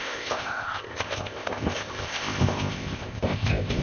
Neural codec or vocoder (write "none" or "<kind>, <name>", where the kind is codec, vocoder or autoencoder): codec, ZipCodec